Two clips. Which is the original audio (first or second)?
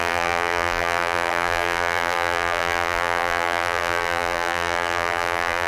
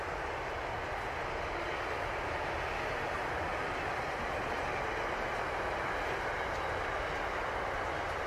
second